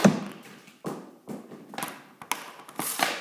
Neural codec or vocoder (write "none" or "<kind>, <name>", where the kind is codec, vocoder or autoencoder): none